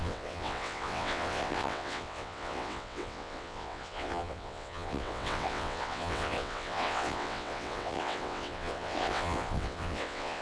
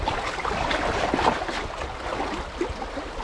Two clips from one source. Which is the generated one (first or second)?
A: first